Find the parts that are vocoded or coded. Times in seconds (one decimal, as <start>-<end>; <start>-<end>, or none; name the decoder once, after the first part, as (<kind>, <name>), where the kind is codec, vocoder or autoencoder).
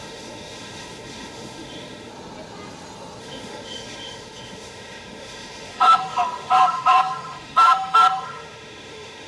0.0-2.1 (autoencoder, DAC-VAE); 3.2-9.3